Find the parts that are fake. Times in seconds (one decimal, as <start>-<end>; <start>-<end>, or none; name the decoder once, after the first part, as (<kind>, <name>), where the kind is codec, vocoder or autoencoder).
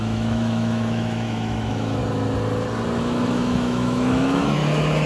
0.0-2.0 (autoencoder, DAC-VAE); 3.0-4.6